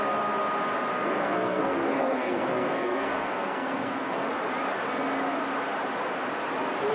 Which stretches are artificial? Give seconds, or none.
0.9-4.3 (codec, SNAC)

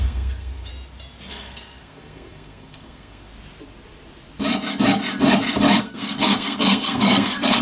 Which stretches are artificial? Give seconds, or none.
0.0-0.7 (codec, SNAC); 1.3-3.3; 5.8-7.6

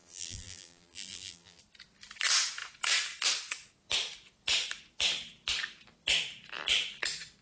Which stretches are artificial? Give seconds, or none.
0.0-1.6 (vocoder, BigVGAN v2)

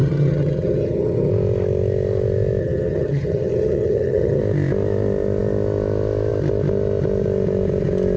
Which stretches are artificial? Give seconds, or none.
0.0-1.3 (vocoder, HiFi-GAN); 2.6-4.4

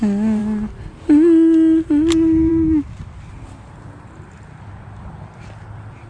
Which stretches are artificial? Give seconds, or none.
none